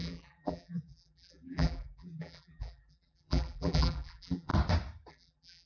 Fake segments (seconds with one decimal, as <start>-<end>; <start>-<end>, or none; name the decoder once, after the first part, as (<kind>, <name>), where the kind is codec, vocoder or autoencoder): 0.0-4.5 (vocoder, BigVGAN v2); 5.1-5.7